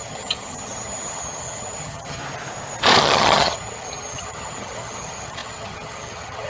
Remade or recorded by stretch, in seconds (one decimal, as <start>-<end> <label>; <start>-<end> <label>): 0.0-2.2 remade; 2.2-3.0 recorded; 3.0-6.5 remade